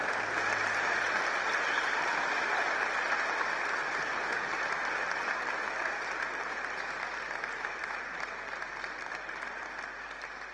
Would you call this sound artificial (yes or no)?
yes